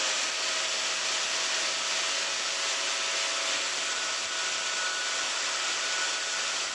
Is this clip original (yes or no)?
yes